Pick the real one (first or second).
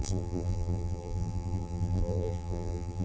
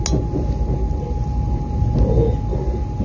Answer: second